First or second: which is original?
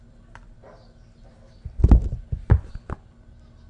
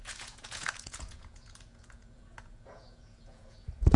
first